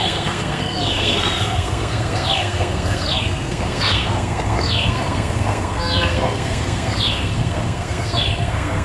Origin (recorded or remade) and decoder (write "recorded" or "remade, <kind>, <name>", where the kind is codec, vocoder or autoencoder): remade, codec, SNAC